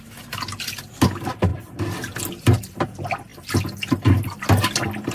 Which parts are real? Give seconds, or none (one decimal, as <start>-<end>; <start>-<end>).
0.0-5.1

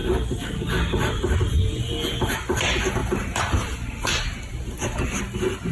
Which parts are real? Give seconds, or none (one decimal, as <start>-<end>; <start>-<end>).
1.3-3.0; 5.2-5.7

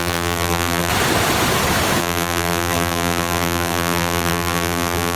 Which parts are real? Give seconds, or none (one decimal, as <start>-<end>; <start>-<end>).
0.9-2.0